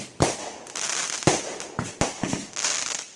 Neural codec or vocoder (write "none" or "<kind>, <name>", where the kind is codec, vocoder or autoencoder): none